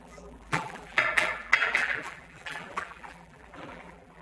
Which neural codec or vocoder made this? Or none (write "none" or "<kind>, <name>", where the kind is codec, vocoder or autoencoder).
vocoder, BigVGAN v2